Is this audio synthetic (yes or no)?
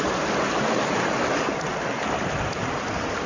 no